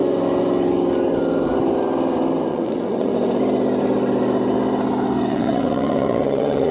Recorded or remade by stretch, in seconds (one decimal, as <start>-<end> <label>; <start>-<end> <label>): 0.0-2.5 recorded; 2.5-3.1 remade; 3.1-5.3 recorded; 5.3-6.7 remade